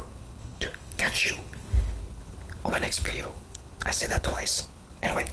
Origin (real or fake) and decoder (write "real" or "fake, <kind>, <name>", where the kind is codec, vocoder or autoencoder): fake, codec, HILCodec